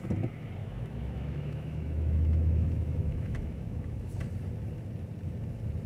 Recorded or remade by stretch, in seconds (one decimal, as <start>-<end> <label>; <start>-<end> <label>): 0.0-0.6 recorded; 0.6-4.1 remade; 4.1-5.9 recorded